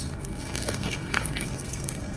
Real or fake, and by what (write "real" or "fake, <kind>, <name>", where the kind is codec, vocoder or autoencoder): fake, codec, SNAC